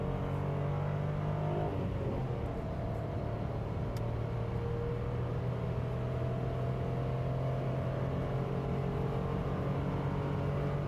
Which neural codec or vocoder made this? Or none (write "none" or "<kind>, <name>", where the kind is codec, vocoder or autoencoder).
none